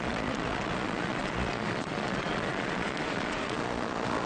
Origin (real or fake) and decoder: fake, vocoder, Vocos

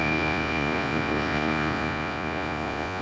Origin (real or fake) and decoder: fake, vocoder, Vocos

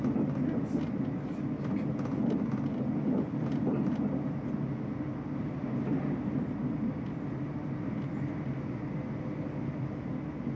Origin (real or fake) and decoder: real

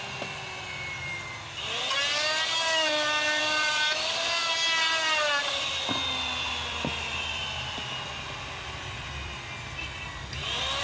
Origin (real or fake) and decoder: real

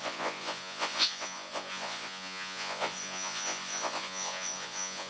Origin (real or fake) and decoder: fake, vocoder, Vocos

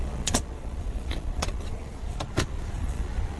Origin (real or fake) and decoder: fake, vocoder, Vocos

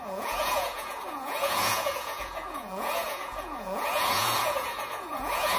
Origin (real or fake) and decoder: fake, vocoder, Vocos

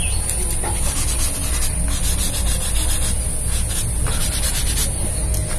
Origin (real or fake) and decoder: real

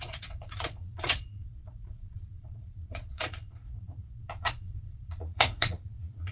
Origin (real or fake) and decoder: fake, vocoder, Vocos